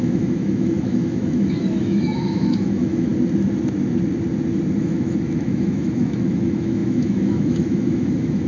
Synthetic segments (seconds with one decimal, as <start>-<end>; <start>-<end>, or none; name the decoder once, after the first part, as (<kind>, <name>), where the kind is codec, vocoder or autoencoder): 0.0-3.1 (autoencoder, DAC-VAE); 4.8-8.5